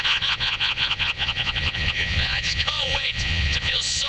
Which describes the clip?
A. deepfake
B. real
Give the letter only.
A